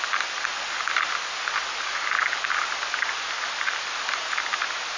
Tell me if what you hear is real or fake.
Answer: real